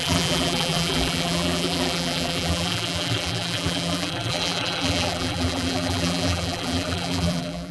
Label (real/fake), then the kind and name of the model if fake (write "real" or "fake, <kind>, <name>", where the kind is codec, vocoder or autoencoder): fake, vocoder, BigVGAN v2